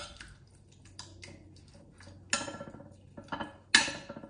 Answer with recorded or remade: recorded